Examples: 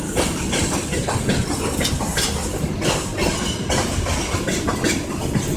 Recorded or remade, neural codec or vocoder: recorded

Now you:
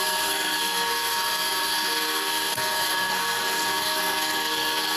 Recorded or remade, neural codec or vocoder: remade, codec, SNAC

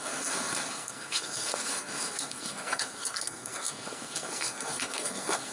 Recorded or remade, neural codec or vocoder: remade, codec, SNAC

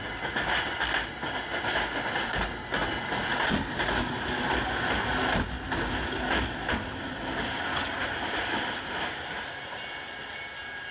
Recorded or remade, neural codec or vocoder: recorded